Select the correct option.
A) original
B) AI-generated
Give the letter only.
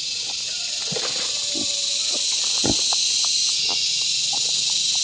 A